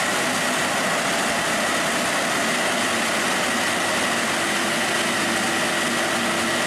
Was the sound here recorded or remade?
recorded